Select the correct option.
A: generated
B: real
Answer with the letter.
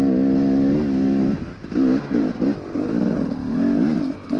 B